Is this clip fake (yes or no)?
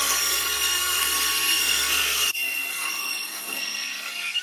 yes